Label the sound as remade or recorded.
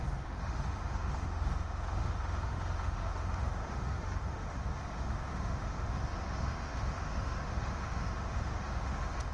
remade